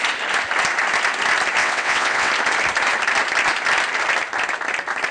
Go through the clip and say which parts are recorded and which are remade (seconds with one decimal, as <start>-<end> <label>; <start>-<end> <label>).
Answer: 0.0-1.6 recorded; 1.6-2.3 remade; 2.3-5.1 recorded